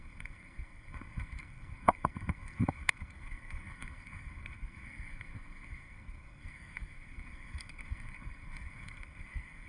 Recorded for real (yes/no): no